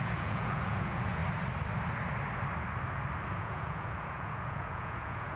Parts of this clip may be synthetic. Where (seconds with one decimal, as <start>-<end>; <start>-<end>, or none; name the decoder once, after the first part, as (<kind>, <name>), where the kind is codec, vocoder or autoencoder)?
0.0-1.2 (vocoder, Vocos); 3.3-5.4